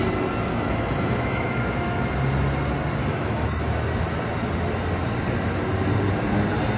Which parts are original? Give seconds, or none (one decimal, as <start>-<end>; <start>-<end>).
0.0-0.5; 2.0-3.0; 3.6-6.8

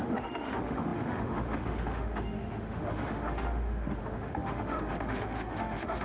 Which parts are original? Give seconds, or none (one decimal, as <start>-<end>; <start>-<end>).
none

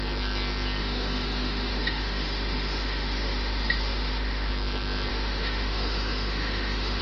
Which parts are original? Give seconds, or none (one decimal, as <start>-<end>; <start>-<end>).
0.0-0.8; 4.5-5.1

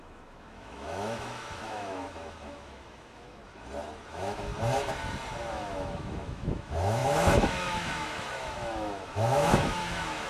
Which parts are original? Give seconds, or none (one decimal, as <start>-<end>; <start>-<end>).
3.4-4.1; 4.5-5.5